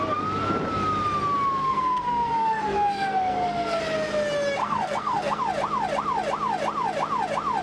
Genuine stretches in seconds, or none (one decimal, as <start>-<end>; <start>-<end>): 0.0-1.6; 3.8-4.6; 5.4-7.6